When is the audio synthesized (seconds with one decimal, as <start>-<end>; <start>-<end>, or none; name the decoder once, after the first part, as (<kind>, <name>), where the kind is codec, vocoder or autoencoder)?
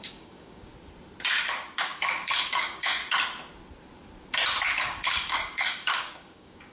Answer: 0.0-0.7 (codec, DAC); 1.8-3.0; 4.8-6.7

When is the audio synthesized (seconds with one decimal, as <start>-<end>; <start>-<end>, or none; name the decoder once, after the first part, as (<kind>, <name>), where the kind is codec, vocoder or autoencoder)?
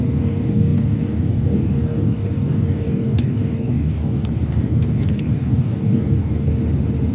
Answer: 0.0-6.5 (codec, DAC)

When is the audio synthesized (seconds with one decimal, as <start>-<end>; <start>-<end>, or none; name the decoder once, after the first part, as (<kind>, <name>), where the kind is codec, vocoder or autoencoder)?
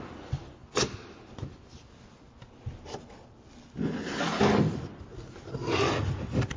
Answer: none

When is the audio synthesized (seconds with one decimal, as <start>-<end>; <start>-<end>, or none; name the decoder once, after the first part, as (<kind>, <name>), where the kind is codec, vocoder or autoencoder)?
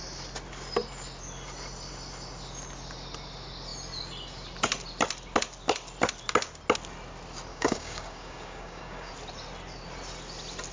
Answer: 7.5-9.1 (codec, DAC)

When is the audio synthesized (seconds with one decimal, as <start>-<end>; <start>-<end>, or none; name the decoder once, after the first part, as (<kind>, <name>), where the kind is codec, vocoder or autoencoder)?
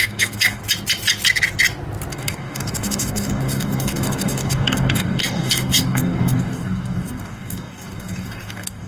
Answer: 0.0-0.6 (codec, DAC); 2.1-8.9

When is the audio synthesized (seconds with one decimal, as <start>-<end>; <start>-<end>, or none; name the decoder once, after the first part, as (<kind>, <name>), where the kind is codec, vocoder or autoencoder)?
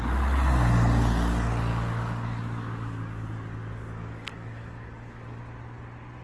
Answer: 1.7-5.4 (codec, DAC)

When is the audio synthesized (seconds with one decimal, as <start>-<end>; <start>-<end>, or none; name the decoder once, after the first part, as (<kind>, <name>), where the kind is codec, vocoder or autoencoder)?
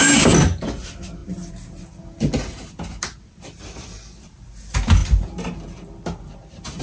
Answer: none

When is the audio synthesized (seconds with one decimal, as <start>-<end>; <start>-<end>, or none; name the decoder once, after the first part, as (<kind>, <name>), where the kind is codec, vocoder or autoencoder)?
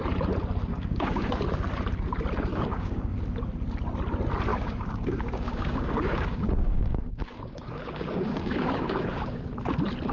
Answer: 0.7-1.3 (codec, DAC); 2.5-3.2; 4.5-9.4